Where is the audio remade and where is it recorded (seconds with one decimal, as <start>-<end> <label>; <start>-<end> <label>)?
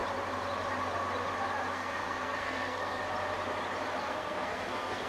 0.0-1.7 recorded; 1.7-3.0 remade; 3.0-4.0 recorded; 4.0-5.1 remade